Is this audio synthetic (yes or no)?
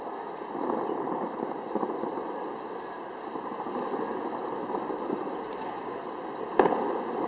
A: no